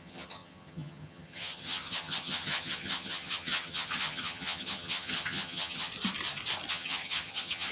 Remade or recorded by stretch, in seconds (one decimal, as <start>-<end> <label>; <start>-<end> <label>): 0.0-5.9 remade; 5.9-6.7 recorded; 6.7-7.7 remade